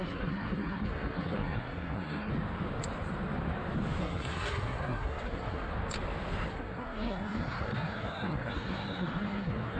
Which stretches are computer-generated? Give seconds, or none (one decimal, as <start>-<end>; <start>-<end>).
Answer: 0.0-2.3; 4.0-5.7; 6.5-9.8